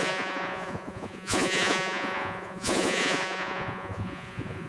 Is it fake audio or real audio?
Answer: fake